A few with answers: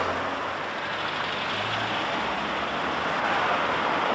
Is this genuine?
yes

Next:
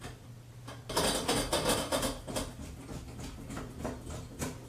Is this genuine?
yes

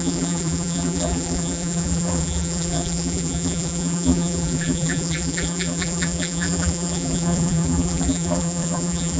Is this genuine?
no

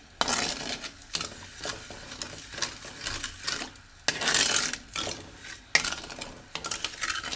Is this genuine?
yes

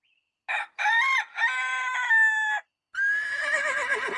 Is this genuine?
yes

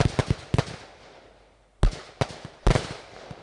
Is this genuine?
yes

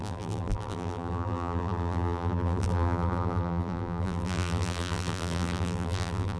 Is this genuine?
no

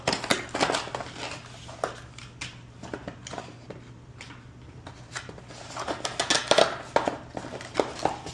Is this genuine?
yes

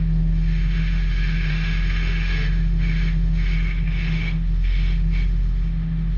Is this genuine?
no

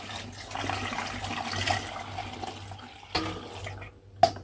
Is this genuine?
yes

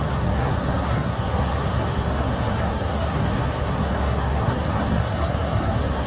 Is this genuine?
no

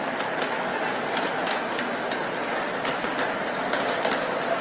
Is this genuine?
yes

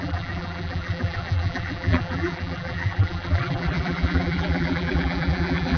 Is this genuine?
no